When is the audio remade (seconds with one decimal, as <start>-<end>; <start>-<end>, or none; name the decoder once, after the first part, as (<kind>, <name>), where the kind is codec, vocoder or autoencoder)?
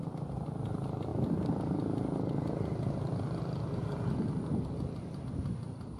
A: 1.1-4.7 (vocoder, BigVGAN v2)